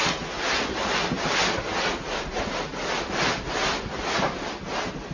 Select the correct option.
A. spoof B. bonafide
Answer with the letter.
B